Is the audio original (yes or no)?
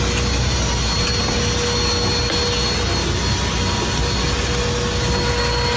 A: yes